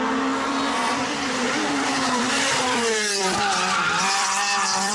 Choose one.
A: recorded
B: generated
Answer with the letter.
B